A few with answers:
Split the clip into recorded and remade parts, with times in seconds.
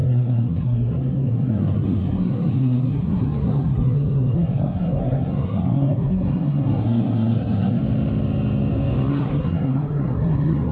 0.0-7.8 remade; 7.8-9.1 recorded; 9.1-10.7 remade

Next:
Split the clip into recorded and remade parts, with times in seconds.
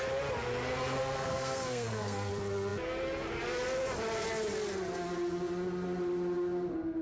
0.0-1.0 recorded; 1.0-2.3 remade; 2.3-7.0 recorded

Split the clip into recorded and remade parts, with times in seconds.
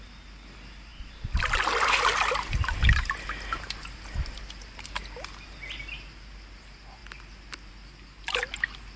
0.0-9.0 recorded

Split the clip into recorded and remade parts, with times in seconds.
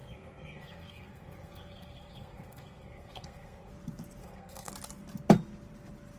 0.0-3.7 remade; 3.7-4.2 recorded; 4.2-4.7 remade; 4.7-6.2 recorded